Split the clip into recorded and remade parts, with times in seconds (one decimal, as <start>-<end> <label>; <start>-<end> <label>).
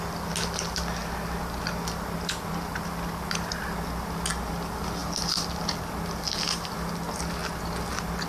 0.0-8.3 recorded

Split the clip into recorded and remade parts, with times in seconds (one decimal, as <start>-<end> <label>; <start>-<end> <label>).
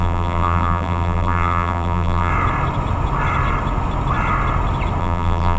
0.0-2.3 remade; 2.3-5.0 recorded; 5.0-5.6 remade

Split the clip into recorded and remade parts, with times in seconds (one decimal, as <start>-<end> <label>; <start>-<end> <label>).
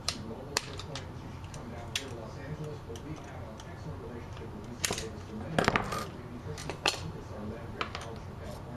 0.0-0.6 remade; 0.6-6.6 recorded; 6.6-7.8 remade; 7.8-8.8 recorded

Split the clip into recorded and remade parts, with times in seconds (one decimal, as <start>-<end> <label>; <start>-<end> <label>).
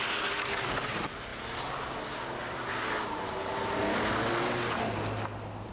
0.0-5.7 recorded